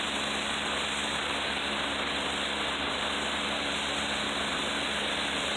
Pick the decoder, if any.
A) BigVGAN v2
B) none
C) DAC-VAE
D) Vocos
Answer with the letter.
B